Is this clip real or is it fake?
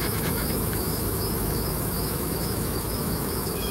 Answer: fake